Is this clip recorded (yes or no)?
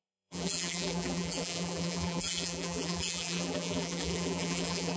no